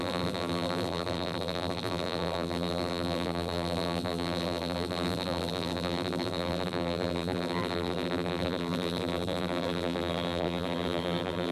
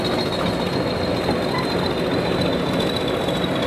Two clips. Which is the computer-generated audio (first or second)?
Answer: first